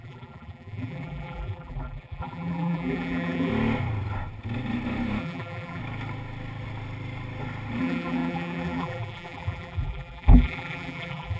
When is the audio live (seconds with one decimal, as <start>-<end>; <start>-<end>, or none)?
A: 3.5-5.2; 5.8-7.8